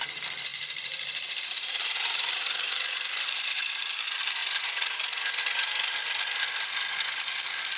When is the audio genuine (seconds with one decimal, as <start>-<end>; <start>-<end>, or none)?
0.0-0.5; 3.7-7.8